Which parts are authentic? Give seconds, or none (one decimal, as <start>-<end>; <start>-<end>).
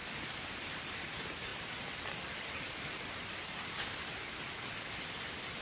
0.0-5.6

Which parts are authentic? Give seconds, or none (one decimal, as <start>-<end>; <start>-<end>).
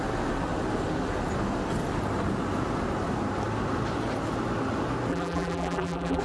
0.0-5.1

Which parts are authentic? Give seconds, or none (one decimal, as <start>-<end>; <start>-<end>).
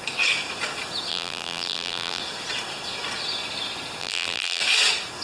0.0-1.1; 2.2-4.0; 4.6-5.2